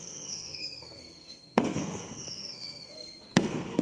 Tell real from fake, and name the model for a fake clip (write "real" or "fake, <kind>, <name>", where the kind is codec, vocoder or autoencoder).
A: fake, codec, SNAC